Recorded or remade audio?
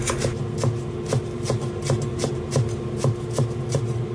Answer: recorded